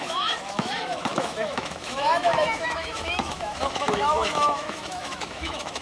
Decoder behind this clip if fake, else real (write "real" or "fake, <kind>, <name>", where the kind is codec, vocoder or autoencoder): fake, autoencoder, DAC-VAE